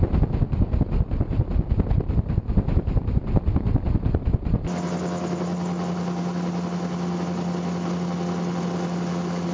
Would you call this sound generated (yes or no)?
no